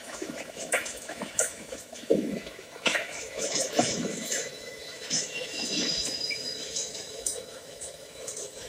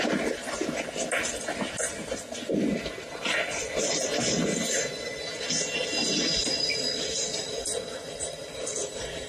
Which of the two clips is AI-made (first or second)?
first